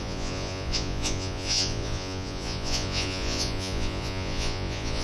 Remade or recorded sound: remade